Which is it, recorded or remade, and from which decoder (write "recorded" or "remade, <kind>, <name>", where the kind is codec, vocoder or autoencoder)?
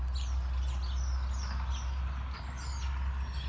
recorded